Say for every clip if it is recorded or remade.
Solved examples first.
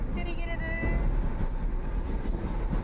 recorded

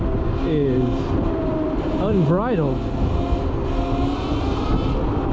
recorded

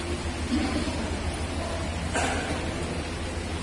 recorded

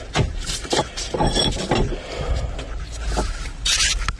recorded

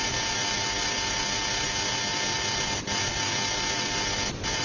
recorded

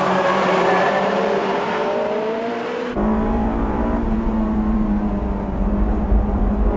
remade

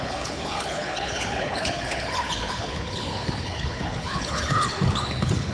remade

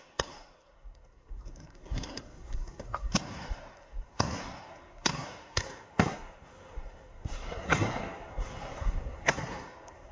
remade